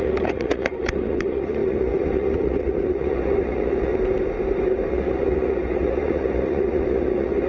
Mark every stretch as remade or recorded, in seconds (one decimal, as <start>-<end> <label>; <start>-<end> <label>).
0.0-3.9 remade; 3.9-4.9 recorded; 4.9-7.5 remade